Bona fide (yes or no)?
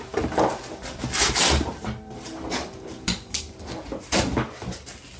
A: yes